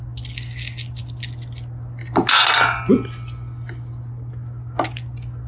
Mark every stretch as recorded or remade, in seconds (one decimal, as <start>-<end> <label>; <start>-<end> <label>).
0.0-5.5 recorded